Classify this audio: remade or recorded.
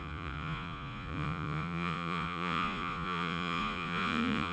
remade